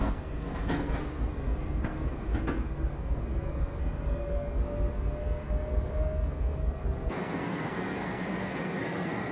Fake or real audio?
fake